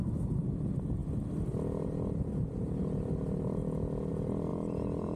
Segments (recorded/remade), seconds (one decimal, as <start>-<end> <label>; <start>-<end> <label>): 0.0-4.5 recorded; 4.5-5.2 remade